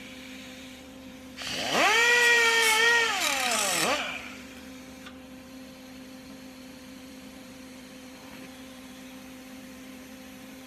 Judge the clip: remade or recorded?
remade